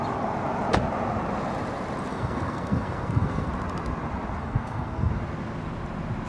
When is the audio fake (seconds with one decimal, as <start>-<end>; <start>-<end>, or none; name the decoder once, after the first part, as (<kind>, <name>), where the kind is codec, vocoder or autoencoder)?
2.1-3.5 (codec, SNAC); 4.4-5.1